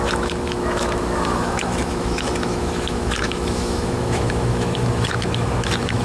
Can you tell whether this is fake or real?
fake